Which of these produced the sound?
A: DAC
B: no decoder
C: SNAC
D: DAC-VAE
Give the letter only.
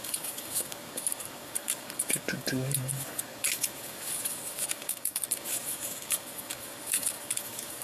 A